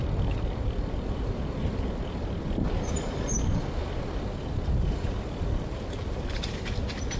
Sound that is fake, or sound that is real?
real